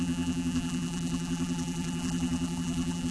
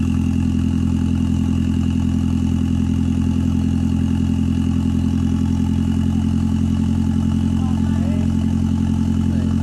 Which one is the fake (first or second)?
first